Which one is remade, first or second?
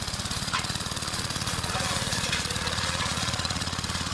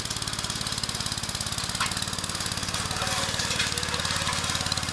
first